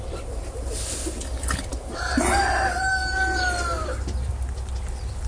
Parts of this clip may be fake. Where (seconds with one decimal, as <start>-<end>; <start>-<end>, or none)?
none